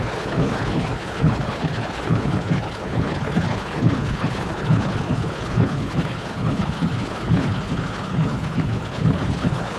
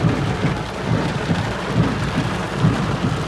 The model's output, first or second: first